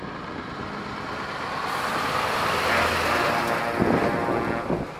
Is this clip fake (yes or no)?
no